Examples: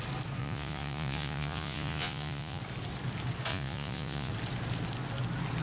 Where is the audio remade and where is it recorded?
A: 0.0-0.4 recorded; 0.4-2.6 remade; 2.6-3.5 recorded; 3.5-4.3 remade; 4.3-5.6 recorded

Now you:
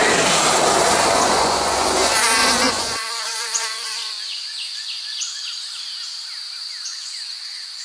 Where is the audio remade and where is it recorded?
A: 0.0-1.0 recorded; 1.0-5.4 remade; 5.4-6.9 recorded; 6.9-7.8 remade

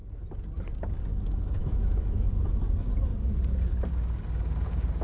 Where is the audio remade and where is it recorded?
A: 0.0-1.6 recorded; 1.6-2.4 remade; 2.4-5.0 recorded